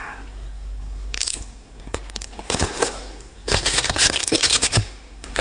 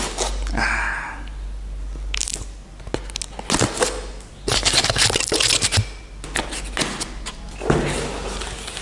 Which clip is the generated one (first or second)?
first